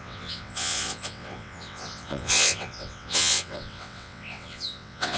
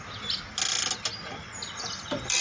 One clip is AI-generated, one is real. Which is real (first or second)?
second